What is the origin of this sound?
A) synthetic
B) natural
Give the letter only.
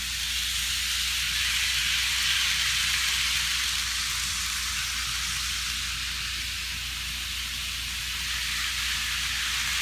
B